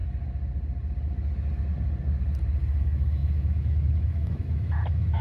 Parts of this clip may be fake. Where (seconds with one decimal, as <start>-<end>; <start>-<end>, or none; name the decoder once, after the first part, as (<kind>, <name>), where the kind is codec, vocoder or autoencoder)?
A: 2.8-5.2 (autoencoder, DAC-VAE)